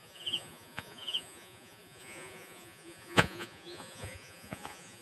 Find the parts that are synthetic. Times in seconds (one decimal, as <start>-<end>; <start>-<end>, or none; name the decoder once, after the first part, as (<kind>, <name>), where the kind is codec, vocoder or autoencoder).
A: 0.0-5.0 (vocoder, Vocos)